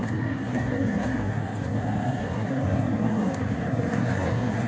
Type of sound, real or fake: fake